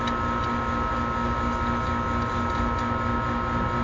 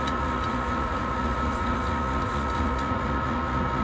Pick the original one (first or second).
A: first